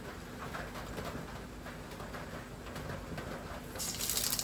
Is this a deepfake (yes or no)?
no